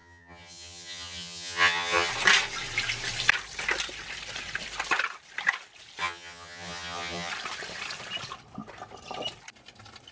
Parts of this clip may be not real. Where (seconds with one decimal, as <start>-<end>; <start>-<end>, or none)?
0.0-2.1; 6.0-7.3